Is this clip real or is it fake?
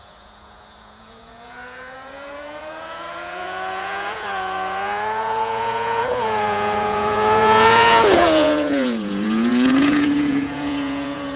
fake